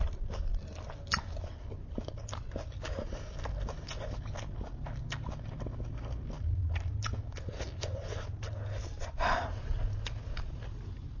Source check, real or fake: real